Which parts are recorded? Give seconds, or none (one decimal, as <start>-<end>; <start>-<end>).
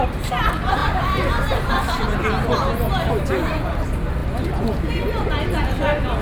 0.0-0.8; 2.2-6.2